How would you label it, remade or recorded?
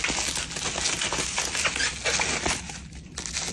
recorded